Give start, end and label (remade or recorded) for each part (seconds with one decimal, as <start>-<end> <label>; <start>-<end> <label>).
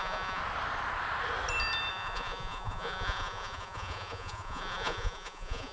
0.0-0.4 remade; 0.4-1.9 recorded; 1.9-5.7 remade